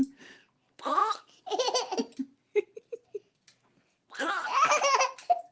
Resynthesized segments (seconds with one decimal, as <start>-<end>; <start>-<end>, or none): none